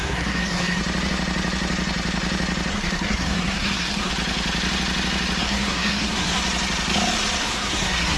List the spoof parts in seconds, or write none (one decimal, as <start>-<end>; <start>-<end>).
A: 0.0-0.8; 2.7-4.1; 5.4-6.4; 7.4-8.2